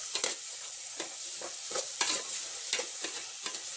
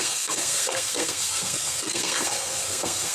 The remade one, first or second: second